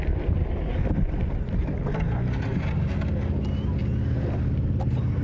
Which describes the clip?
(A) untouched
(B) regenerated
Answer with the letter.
A